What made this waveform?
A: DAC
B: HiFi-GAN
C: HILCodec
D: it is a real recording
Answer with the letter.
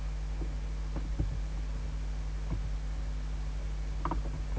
D